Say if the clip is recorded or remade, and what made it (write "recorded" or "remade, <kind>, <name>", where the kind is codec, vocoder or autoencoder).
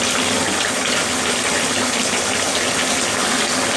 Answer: recorded